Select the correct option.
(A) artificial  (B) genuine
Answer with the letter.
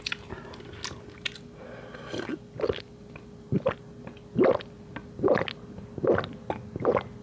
B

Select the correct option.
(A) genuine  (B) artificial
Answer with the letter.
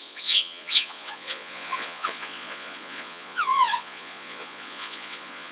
B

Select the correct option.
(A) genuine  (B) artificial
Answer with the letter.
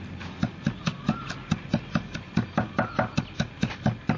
A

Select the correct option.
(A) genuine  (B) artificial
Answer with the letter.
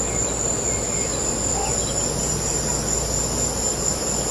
A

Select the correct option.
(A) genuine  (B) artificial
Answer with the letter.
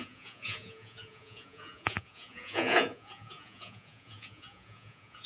B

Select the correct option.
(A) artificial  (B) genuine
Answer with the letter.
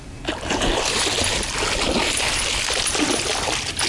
B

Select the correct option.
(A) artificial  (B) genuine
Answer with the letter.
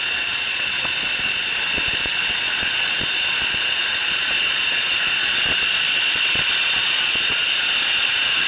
A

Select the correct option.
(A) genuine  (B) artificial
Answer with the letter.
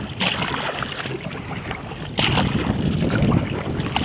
A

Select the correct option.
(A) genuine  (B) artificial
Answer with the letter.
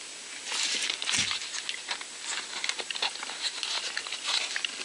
A